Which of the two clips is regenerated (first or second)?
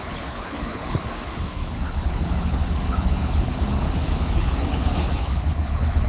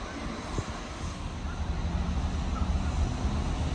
first